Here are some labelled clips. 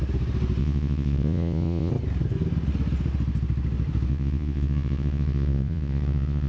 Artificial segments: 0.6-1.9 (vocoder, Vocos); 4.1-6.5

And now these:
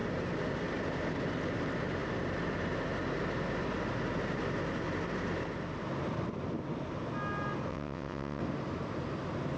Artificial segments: 7.7-8.4 (vocoder, WaveNeXt)

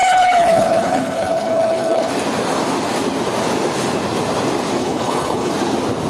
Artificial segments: 0.0-2.1 (codec, HILCodec); 4.8-5.5

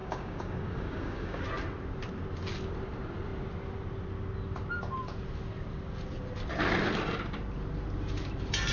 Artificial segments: 0.0-1.4 (codec, DAC)